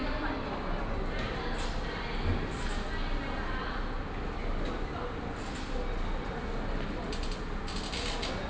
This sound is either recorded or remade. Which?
recorded